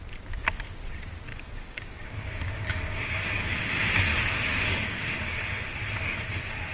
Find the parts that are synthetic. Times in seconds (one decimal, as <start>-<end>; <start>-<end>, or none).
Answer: 1.3-3.4; 4.1-5.7

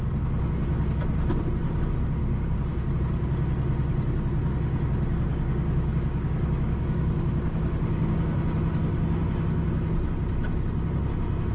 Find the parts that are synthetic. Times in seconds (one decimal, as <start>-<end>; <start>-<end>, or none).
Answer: 2.2-2.9; 5.3-8.2

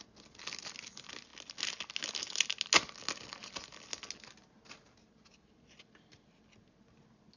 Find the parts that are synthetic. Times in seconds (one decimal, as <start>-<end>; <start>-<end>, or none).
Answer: none